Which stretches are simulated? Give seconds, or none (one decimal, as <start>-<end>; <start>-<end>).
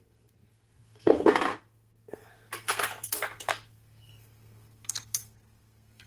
0.0-6.1